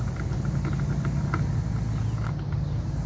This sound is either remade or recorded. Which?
recorded